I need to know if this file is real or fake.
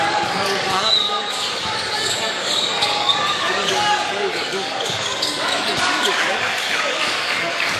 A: fake